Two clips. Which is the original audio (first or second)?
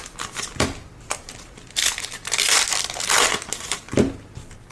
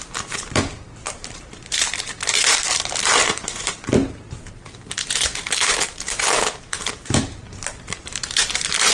first